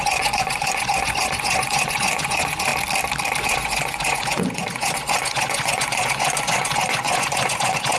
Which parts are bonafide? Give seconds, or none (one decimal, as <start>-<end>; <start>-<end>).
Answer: 2.7-3.4